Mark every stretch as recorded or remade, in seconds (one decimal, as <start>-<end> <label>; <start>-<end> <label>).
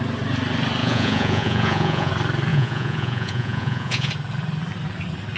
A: 0.0-0.8 recorded; 0.8-2.1 remade; 2.1-2.5 recorded; 2.5-4.1 remade; 4.1-5.4 recorded